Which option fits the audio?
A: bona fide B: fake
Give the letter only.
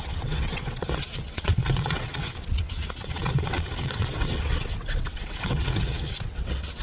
B